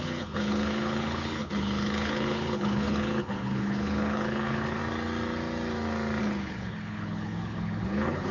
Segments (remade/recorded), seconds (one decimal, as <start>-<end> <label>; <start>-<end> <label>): 0.0-4.8 remade; 4.8-6.2 recorded; 6.2-8.3 remade